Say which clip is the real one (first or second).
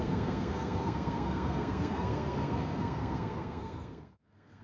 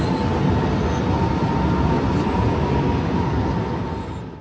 second